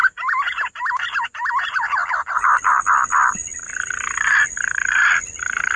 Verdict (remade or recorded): recorded